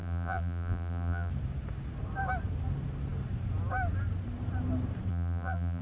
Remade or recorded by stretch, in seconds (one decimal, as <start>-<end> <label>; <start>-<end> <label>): 0.0-1.3 remade; 1.3-5.1 recorded; 5.1-5.8 remade